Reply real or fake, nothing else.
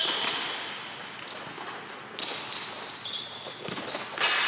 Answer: real